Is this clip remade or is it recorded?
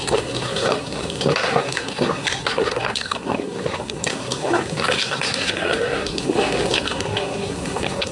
remade